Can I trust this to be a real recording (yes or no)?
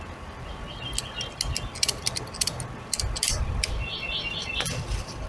yes